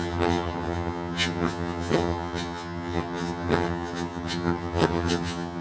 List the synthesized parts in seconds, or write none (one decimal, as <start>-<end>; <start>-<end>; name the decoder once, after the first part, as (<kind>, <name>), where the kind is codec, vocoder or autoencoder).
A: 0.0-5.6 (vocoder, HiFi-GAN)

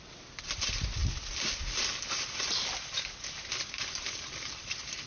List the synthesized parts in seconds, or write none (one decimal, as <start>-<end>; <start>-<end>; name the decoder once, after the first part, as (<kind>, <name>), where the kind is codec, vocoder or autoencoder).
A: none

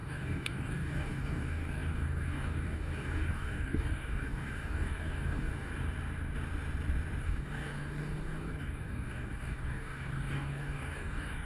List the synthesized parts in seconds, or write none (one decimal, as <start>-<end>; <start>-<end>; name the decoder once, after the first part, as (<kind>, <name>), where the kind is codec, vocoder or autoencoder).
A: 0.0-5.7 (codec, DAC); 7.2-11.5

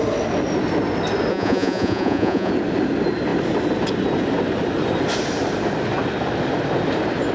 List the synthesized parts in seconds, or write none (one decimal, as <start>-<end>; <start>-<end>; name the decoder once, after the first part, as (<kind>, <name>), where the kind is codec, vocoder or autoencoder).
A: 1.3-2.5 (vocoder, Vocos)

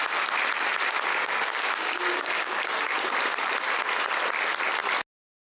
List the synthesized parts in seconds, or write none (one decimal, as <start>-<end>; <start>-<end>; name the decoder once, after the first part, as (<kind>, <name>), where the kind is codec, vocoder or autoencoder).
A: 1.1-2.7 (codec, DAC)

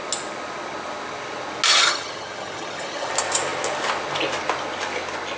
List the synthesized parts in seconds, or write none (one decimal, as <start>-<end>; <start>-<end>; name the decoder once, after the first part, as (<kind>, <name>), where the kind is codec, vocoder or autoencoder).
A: 1.7-3.1 (vocoder, HiFi-GAN)